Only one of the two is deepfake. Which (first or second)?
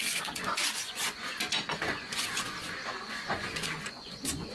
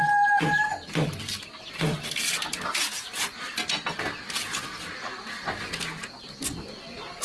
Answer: first